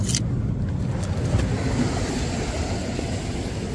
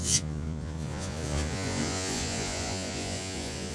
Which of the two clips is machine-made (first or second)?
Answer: second